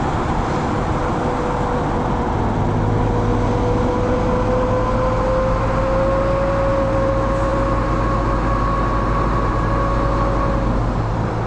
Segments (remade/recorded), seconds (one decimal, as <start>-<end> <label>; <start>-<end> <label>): 0.0-11.5 recorded